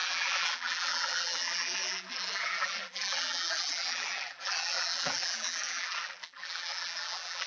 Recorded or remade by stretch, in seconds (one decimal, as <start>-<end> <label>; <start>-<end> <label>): 0.0-7.5 remade

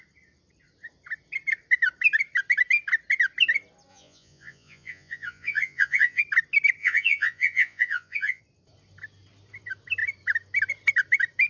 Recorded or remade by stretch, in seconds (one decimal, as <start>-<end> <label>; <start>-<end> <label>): 0.0-3.9 recorded; 3.9-6.2 remade; 6.2-6.8 recorded; 6.8-8.4 remade; 8.4-11.5 recorded

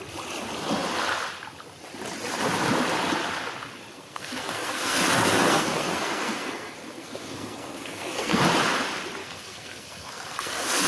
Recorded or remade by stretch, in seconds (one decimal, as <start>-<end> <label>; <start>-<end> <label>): 0.0-3.8 recorded; 3.8-8.4 remade; 8.4-9.2 recorded; 9.2-10.9 remade

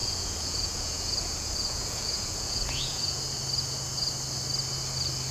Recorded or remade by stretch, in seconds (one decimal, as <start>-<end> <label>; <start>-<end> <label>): 0.0-3.2 remade; 3.2-5.3 recorded

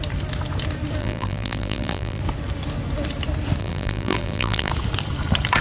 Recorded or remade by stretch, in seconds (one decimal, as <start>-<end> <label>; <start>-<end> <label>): 0.0-1.0 recorded; 1.0-2.2 remade; 2.2-3.6 recorded; 3.6-4.7 remade; 4.7-5.6 recorded

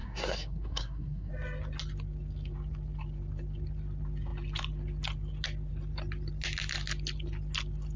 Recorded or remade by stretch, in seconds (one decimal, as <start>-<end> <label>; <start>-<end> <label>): 0.0-1.3 remade; 1.3-8.0 recorded

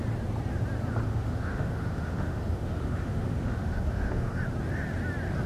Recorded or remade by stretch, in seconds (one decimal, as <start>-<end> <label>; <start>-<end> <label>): 0.0-1.1 recorded; 1.1-4.4 remade; 4.4-5.5 recorded

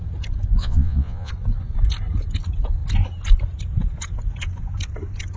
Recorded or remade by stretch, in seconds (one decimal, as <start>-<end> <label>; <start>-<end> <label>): 0.0-0.6 recorded; 0.6-1.3 remade; 1.3-5.4 recorded